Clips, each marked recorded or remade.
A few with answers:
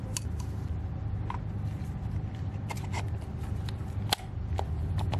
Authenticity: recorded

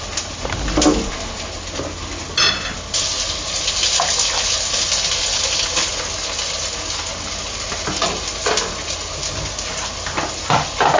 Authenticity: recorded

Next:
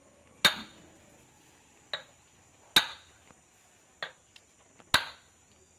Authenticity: recorded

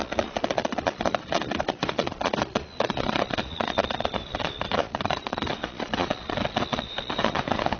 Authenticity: remade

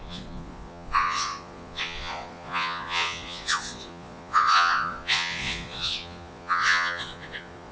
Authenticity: remade